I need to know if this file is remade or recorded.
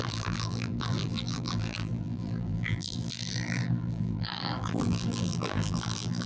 remade